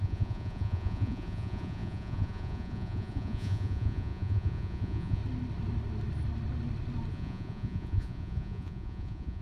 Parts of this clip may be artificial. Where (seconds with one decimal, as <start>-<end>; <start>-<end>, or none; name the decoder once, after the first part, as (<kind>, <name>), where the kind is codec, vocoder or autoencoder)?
0.0-5.2 (vocoder, Vocos); 7.1-9.4